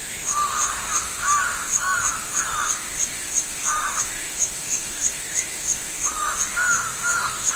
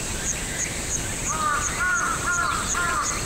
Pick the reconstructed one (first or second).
first